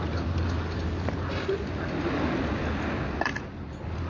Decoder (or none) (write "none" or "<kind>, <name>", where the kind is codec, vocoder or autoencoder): none